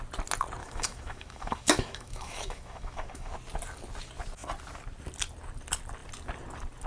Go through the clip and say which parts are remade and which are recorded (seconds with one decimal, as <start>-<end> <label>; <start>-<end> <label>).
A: 0.0-0.6 recorded; 0.6-3.3 remade; 3.3-6.9 recorded